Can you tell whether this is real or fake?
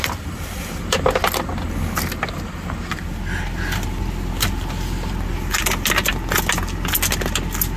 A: real